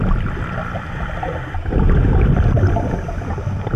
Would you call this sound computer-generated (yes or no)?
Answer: yes